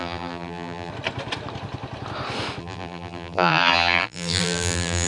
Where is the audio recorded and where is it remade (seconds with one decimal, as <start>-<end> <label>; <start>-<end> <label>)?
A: 0.0-0.9 remade; 0.9-2.6 recorded; 2.6-5.1 remade